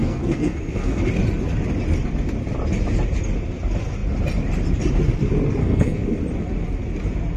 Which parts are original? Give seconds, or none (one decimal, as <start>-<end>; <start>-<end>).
1.0-5.6; 6.2-7.4